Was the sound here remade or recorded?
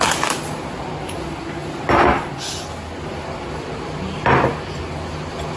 recorded